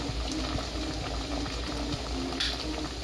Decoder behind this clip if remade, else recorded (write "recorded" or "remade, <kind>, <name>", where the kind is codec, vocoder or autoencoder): recorded